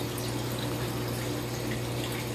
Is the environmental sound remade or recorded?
recorded